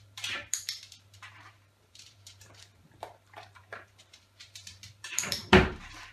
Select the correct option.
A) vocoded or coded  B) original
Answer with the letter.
A